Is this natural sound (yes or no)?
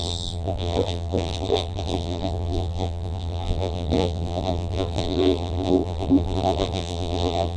no